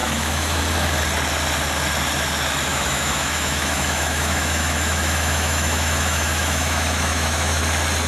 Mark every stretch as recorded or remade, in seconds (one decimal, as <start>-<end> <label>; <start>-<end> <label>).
0.0-0.6 remade; 0.6-2.7 recorded; 2.7-7.6 remade; 7.6-8.1 recorded